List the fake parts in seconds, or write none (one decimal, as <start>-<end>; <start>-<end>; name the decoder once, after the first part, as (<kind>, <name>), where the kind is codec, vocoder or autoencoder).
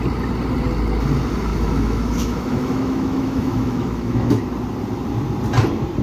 1.5-4.4 (autoencoder, DAC-VAE)